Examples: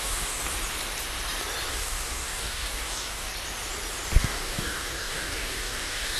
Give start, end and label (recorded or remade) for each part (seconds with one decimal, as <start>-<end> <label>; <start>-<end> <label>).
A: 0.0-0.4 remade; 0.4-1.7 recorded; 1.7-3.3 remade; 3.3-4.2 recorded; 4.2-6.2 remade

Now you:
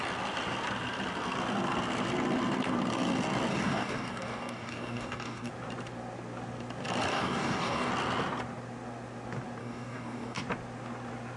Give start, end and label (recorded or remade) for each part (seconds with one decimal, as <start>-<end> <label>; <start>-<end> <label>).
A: 0.0-3.5 recorded; 3.5-5.5 remade; 5.5-7.1 recorded; 7.1-7.9 remade; 7.9-9.6 recorded; 9.6-10.4 remade; 10.4-11.4 recorded

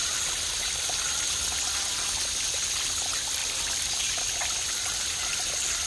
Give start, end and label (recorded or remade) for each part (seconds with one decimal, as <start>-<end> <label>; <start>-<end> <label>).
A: 0.0-5.9 recorded